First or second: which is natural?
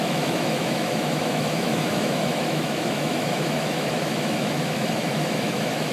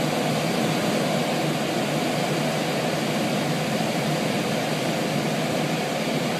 second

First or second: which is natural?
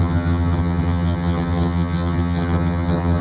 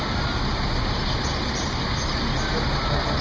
second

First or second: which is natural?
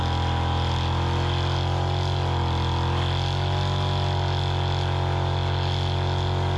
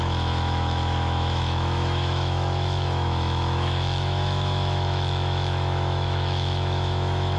first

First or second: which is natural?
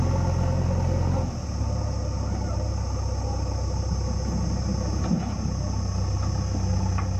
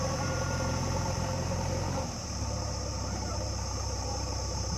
first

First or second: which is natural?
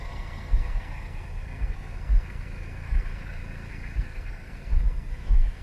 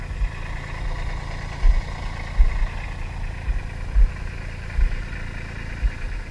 second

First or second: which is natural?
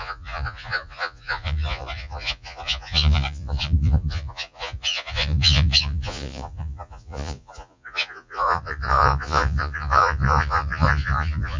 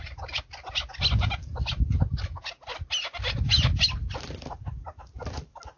second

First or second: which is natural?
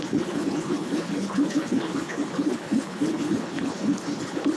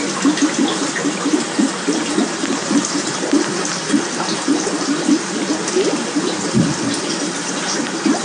second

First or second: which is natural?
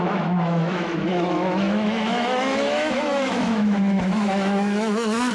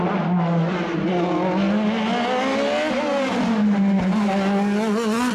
second